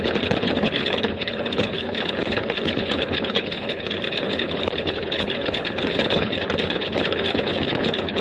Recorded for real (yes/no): no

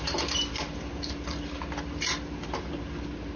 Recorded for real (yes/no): yes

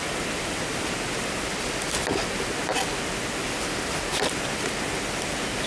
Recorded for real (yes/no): yes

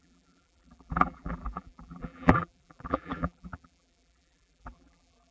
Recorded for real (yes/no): no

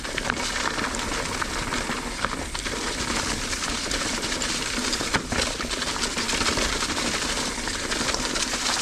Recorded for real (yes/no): no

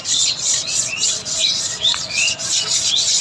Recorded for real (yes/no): no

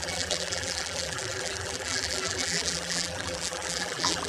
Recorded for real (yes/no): no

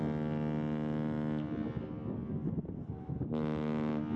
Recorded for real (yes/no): yes